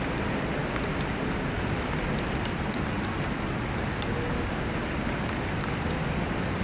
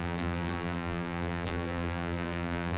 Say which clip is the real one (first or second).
first